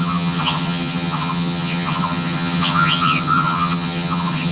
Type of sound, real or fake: fake